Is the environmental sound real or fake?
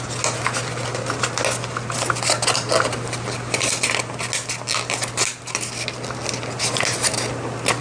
real